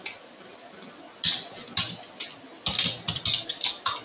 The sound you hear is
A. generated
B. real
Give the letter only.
B